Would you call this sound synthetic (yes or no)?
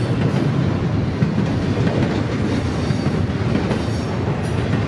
no